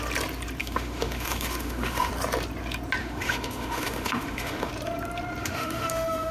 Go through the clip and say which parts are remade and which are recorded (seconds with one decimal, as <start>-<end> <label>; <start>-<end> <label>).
0.0-0.6 recorded; 0.6-2.1 remade; 2.1-3.0 recorded; 3.0-4.7 remade; 4.7-5.4 recorded; 5.4-6.3 remade